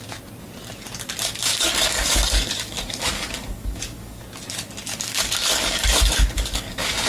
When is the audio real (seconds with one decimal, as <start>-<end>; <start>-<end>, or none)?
0.0-1.5; 4.2-4.9